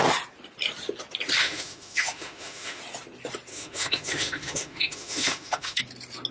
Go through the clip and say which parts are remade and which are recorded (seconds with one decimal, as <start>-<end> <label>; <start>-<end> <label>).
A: 0.0-1.4 recorded; 1.4-2.8 remade; 2.8-3.5 recorded; 3.5-5.8 remade; 5.8-6.3 recorded